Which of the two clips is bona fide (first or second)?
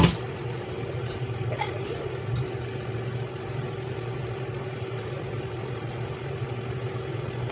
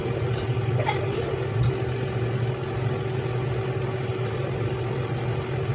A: second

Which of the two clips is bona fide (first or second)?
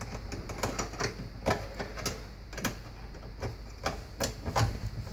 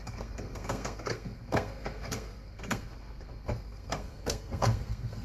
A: first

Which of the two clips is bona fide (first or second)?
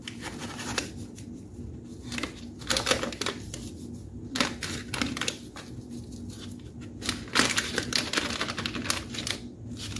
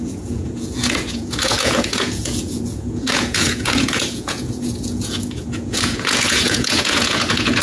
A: first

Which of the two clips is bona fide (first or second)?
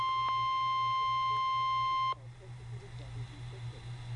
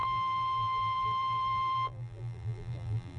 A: first